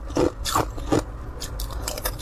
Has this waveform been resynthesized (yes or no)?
no